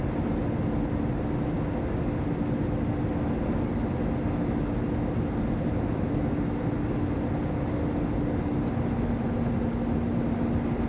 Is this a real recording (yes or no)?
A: yes